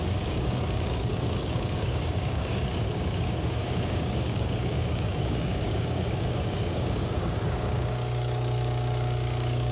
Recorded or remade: remade